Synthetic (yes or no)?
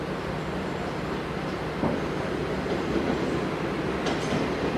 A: no